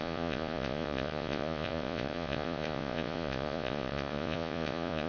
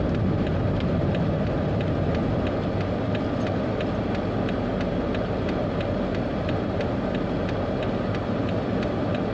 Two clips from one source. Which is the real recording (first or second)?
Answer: second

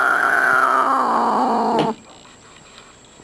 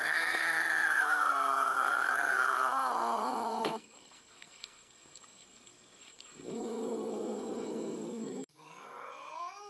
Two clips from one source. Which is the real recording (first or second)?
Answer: first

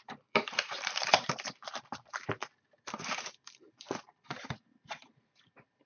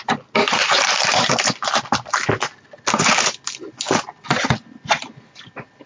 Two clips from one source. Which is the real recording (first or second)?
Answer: second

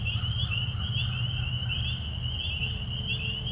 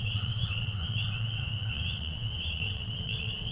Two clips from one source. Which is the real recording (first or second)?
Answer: first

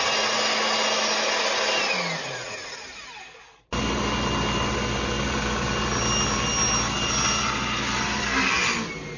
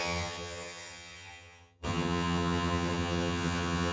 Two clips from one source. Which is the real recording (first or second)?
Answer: first